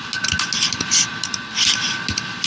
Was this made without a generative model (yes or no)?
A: yes